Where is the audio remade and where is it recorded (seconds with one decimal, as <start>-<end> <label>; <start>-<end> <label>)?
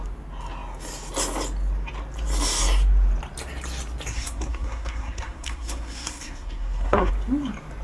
0.0-4.1 recorded; 4.1-7.1 remade; 7.1-7.8 recorded